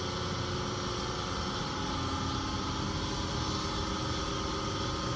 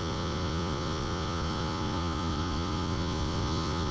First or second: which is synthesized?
second